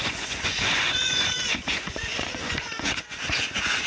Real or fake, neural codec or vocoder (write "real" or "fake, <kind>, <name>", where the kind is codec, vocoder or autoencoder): fake, vocoder, Vocos